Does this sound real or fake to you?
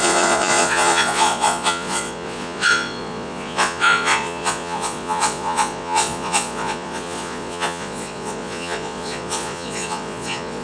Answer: fake